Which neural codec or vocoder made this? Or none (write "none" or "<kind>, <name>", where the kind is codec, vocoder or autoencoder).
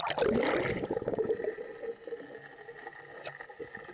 none